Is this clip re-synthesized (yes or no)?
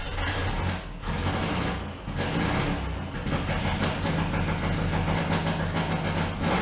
no